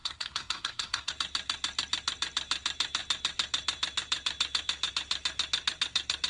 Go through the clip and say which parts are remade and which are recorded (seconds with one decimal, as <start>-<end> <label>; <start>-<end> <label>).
0.0-1.1 remade; 1.1-6.3 recorded

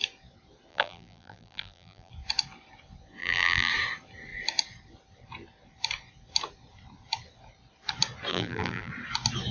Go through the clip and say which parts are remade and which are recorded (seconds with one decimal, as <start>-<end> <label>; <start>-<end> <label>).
0.0-0.7 recorded; 0.7-2.1 remade; 2.1-3.2 recorded; 3.2-3.7 remade; 3.7-8.3 recorded; 8.3-8.9 remade; 8.9-9.5 recorded

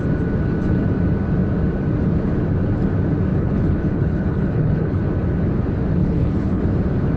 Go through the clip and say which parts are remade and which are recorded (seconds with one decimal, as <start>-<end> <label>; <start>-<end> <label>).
0.0-3.3 recorded; 3.3-5.0 remade; 5.0-6.0 recorded; 6.0-6.6 remade; 6.6-7.2 recorded

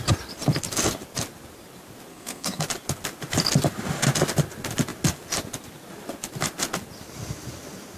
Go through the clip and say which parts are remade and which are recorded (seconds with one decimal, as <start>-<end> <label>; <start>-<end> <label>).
0.0-2.1 recorded; 2.1-2.6 remade; 2.6-8.0 recorded

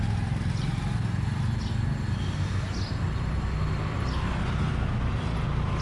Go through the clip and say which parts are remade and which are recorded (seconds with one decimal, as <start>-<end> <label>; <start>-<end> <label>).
0.0-5.8 recorded

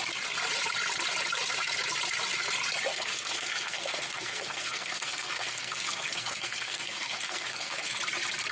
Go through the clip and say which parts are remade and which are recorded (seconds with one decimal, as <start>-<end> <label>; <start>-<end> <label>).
0.0-2.9 recorded; 2.9-8.0 remade; 8.0-8.5 recorded

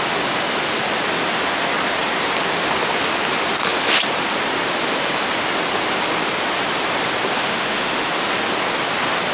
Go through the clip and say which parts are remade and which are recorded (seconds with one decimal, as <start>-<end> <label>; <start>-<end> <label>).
0.0-7.4 recorded; 7.4-8.1 remade; 8.1-9.3 recorded

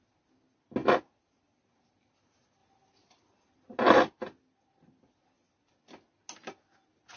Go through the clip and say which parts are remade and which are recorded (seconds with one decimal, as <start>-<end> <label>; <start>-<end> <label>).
0.0-7.2 recorded